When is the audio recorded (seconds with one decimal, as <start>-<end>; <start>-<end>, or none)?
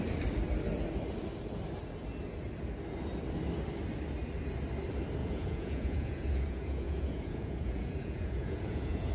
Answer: 0.0-5.2